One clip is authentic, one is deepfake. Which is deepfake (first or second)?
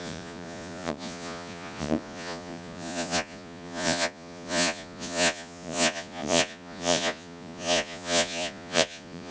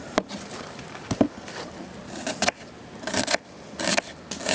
first